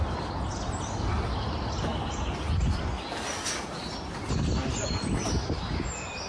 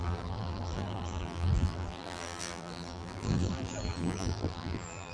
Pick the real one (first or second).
first